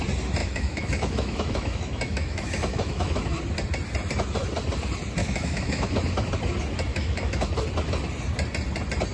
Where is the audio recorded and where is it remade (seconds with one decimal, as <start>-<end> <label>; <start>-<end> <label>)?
0.0-0.4 recorded; 0.4-3.4 remade; 3.4-5.2 recorded; 5.2-5.9 remade; 5.9-6.9 recorded; 6.9-7.6 remade; 7.6-9.1 recorded